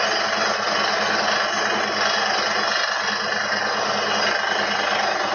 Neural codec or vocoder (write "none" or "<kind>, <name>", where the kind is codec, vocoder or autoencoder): none